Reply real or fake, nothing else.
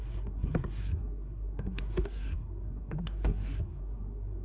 fake